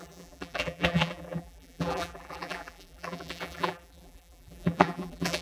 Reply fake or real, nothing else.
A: fake